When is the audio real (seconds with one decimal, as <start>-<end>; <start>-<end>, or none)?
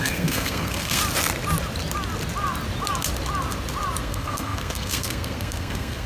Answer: 1.0-4.0